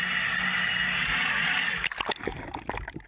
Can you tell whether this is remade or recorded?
recorded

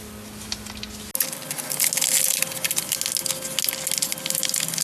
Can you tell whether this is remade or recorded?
recorded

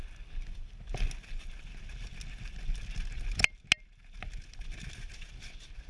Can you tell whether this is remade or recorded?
recorded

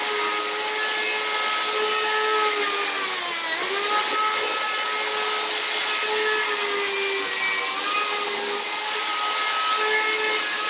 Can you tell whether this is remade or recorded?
recorded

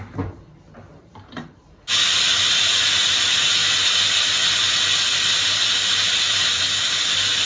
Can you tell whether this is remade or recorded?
recorded